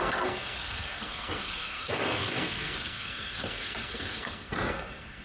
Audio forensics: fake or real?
fake